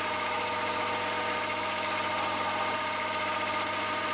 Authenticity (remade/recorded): recorded